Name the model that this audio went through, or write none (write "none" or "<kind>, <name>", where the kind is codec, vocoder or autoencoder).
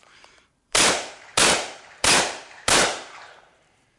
vocoder, BigVGAN v2